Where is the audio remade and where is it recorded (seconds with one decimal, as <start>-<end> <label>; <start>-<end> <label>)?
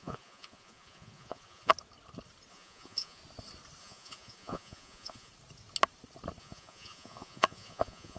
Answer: 0.0-1.7 remade; 1.7-2.5 recorded; 2.5-3.2 remade; 3.2-3.8 recorded; 3.8-5.3 remade; 5.3-6.4 recorded; 6.4-8.2 remade